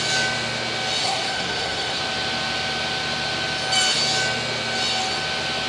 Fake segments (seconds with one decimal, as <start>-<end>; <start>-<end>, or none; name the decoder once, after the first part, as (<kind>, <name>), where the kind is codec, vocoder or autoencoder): 1.0-2.0 (codec, SNAC)